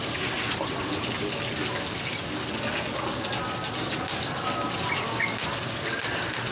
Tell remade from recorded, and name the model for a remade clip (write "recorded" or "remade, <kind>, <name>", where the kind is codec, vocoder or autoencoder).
recorded